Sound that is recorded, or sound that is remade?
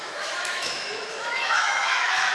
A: remade